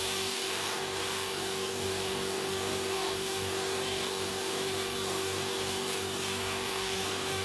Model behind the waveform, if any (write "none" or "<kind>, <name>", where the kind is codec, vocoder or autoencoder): codec, DAC